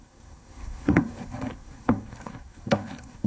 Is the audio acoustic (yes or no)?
no